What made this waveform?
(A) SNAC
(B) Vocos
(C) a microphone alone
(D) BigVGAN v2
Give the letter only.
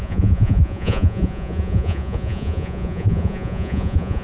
B